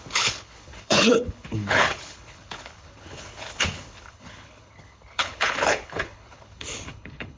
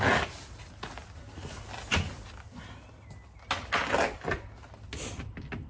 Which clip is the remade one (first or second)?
first